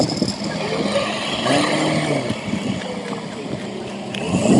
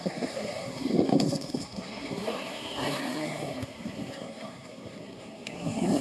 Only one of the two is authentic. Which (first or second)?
first